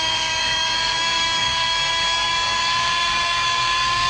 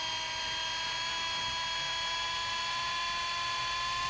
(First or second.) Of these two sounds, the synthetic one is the first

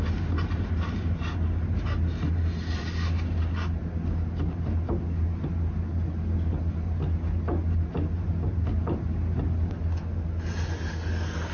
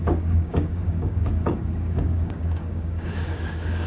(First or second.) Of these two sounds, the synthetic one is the second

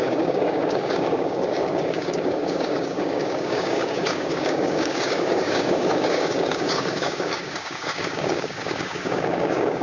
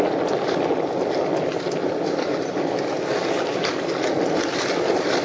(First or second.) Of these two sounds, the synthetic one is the first